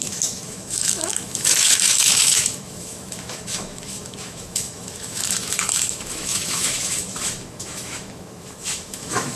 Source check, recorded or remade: remade